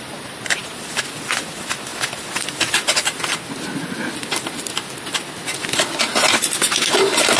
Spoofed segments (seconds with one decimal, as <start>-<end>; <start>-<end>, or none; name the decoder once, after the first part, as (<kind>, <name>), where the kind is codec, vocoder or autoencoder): none